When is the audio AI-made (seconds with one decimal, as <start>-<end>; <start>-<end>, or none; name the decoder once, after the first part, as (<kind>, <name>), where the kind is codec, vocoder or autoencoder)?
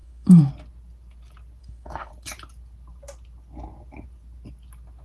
0.0-0.5 (autoencoder, DAC-VAE); 1.6-2.1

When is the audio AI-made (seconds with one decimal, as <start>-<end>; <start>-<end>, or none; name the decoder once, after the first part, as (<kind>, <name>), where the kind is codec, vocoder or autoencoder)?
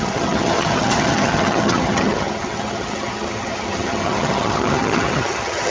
0.0-5.7 (vocoder, HiFi-GAN)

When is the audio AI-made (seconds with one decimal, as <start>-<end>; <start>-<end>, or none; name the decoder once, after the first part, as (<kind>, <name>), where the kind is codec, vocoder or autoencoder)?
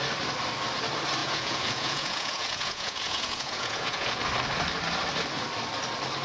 1.2-4.2 (vocoder, Vocos)